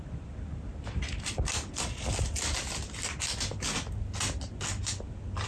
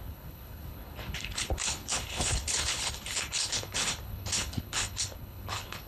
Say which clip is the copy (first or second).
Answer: second